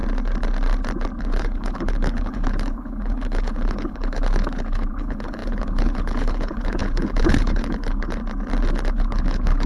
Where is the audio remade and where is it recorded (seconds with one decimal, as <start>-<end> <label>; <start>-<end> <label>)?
0.0-1.2 recorded; 1.2-8.2 remade; 8.2-8.9 recorded; 8.9-9.7 remade